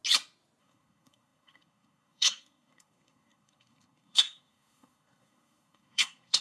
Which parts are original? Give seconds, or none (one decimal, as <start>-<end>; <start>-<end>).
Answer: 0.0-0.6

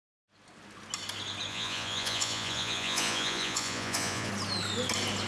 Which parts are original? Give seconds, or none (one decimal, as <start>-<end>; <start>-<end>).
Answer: 0.0-1.5; 4.3-5.3

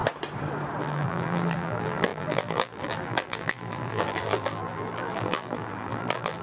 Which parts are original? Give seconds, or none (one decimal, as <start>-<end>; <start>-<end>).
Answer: 0.0-0.8